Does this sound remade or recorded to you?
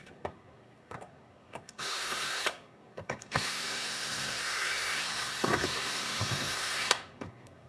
remade